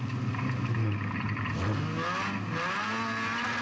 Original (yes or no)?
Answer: yes